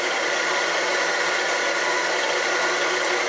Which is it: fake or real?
real